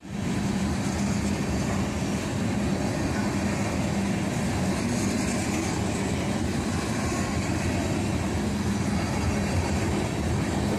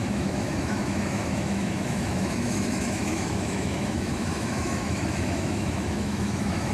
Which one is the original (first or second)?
first